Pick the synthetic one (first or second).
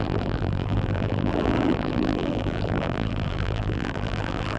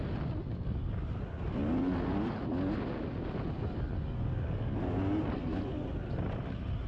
first